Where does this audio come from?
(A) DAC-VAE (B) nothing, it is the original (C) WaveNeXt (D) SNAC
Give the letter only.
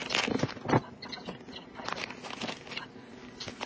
B